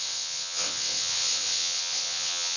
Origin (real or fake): fake